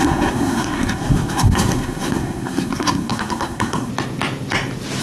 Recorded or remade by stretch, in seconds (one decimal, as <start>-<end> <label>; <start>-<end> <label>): 0.0-3.9 remade; 3.9-5.0 recorded